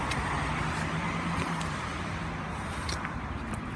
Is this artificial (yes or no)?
no